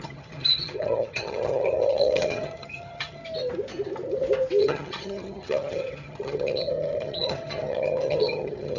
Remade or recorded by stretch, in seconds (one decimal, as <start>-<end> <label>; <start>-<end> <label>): 0.0-3.2 remade; 3.2-4.6 recorded; 4.6-8.8 remade